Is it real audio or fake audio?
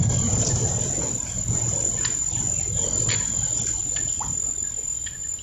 real